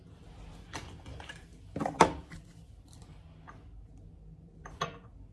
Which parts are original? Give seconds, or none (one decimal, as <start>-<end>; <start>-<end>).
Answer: 0.0-5.3